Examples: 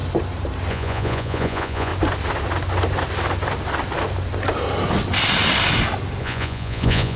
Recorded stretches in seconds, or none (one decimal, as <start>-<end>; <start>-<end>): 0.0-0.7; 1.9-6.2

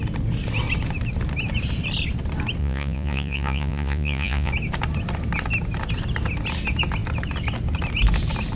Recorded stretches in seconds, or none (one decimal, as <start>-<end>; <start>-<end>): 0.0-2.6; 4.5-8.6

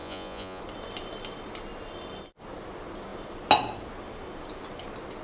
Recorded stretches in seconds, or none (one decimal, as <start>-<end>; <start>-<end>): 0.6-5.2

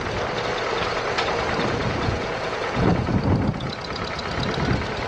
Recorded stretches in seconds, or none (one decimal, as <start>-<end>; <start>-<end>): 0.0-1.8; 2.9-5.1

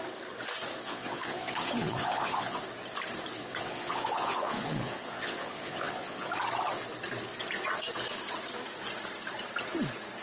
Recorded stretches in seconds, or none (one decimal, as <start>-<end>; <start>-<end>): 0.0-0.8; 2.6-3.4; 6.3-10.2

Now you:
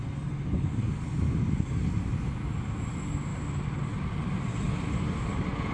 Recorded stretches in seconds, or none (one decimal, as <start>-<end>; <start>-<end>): 0.0-5.7

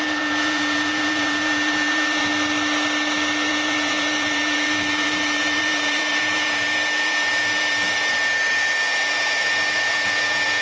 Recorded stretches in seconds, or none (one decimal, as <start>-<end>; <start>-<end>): 2.3-3.5

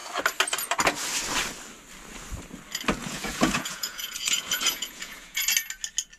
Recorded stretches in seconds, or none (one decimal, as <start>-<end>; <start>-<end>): 0.0-3.0; 5.5-6.2